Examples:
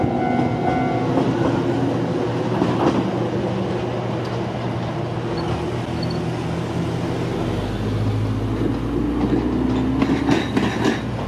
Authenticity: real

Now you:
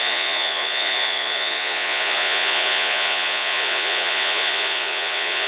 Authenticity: fake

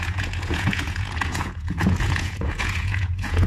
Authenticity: fake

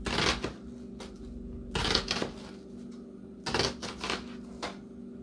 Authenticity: real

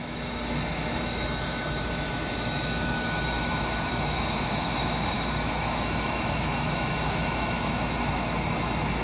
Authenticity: fake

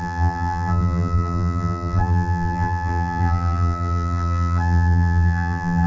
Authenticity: fake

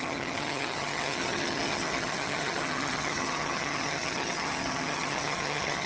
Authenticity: fake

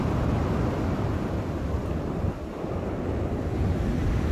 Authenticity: real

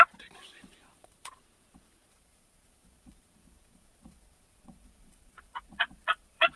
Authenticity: fake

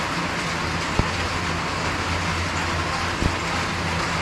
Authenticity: real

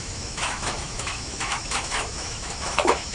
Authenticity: fake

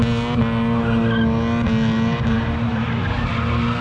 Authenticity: real